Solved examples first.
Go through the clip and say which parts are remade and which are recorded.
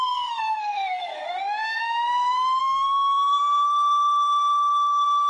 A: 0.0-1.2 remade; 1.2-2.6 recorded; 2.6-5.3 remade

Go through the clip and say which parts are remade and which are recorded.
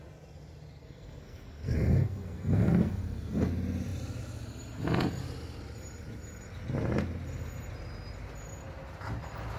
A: 0.0-0.8 recorded; 0.8-3.5 remade; 3.5-9.6 recorded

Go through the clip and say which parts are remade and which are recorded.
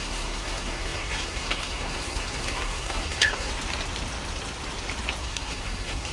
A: 0.0-3.5 remade; 3.5-5.2 recorded; 5.2-6.1 remade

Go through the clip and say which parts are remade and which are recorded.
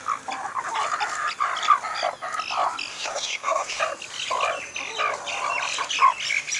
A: 0.0-2.9 recorded; 2.9-3.8 remade; 3.8-6.6 recorded